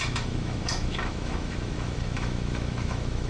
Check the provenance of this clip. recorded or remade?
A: remade